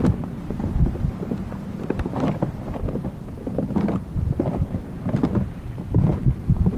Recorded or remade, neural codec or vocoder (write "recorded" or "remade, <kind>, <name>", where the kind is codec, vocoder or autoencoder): recorded